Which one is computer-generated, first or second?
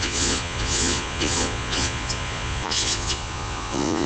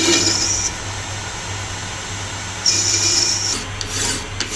first